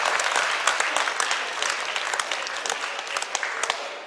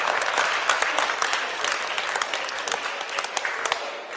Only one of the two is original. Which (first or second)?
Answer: first